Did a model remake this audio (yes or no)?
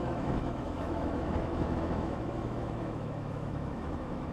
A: yes